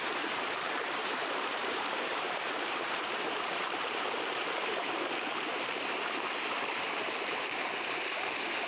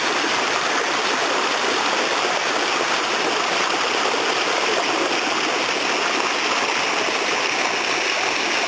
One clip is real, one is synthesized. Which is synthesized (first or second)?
first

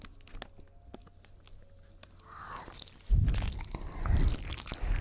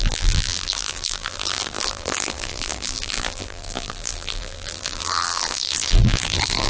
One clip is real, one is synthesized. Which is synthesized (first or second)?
second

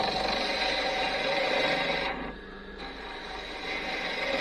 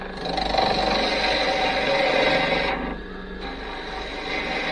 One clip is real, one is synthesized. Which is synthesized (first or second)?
first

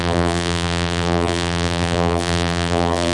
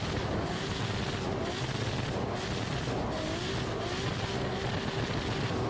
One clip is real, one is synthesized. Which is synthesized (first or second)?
first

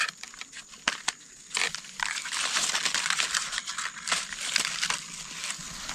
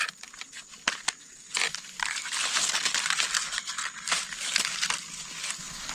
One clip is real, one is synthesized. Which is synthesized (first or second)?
first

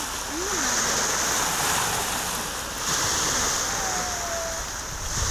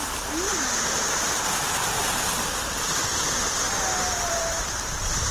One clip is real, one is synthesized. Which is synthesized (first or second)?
second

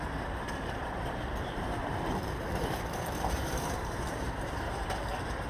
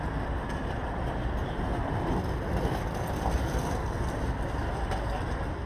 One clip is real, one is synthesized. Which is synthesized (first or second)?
first